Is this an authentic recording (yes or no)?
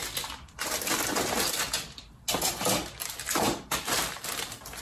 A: yes